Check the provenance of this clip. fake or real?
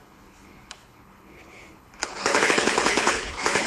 fake